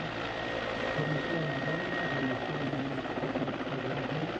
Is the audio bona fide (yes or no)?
no